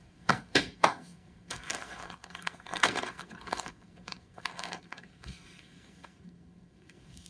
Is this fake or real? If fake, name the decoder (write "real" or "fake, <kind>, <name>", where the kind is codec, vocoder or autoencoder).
fake, codec, SNAC